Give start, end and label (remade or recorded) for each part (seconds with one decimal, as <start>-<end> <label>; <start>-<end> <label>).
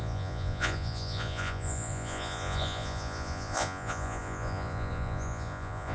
0.0-5.9 remade